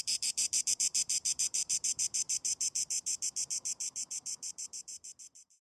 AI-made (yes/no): yes